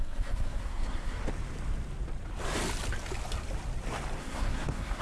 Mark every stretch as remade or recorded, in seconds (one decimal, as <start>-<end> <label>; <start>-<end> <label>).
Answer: 0.0-1.2 remade; 1.2-4.2 recorded; 4.2-5.0 remade